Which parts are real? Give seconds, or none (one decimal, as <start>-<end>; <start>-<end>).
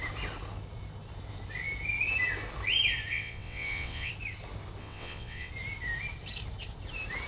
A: 0.0-3.1; 4.1-4.8; 5.5-7.3